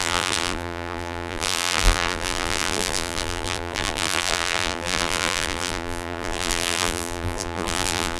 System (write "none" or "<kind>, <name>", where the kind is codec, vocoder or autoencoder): vocoder, BigVGAN v2